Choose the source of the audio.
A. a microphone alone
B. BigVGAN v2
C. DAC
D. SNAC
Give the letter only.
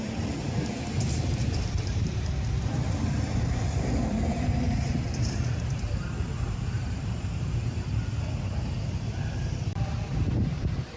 B